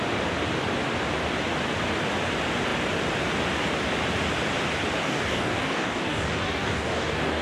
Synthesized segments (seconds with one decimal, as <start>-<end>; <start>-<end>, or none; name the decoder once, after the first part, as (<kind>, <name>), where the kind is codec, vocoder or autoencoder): 5.0-7.4 (codec, DAC)